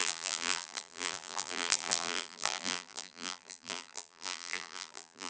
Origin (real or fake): fake